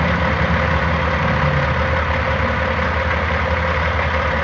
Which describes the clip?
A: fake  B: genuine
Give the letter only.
B